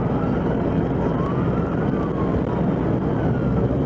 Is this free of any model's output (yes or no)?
yes